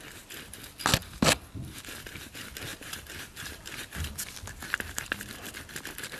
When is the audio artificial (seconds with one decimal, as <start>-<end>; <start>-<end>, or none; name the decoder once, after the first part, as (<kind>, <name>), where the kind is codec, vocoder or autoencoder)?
2.7-4.1 (vocoder, BigVGAN v2)